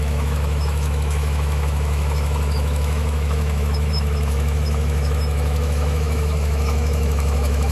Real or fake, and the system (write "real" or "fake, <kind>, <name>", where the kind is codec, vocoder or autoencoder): fake, autoencoder, DAC-VAE